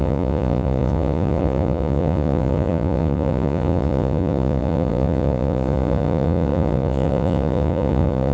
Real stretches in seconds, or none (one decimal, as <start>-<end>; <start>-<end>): none